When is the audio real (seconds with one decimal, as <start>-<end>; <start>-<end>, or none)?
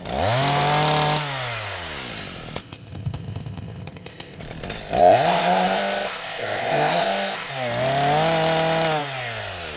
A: 0.0-2.6; 4.4-5.0; 7.5-9.8